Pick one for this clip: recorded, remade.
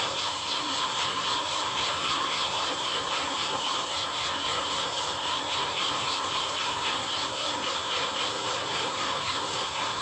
remade